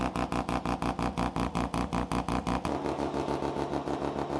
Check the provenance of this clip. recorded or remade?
recorded